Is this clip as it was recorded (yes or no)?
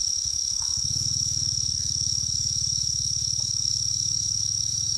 no